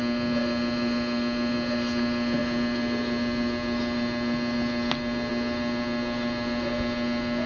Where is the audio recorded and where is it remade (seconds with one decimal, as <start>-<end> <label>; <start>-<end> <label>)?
0.0-7.5 recorded